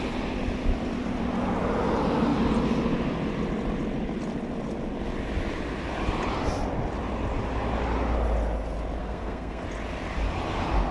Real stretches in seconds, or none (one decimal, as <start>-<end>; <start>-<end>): 0.0-9.0; 9.6-10.9